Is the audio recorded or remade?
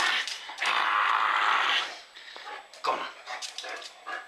recorded